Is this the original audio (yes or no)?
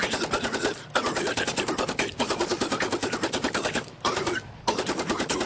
yes